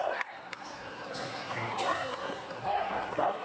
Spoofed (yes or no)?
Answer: yes